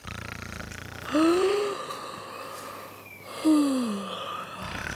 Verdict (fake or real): real